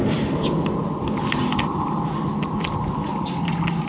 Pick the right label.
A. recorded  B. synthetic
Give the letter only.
A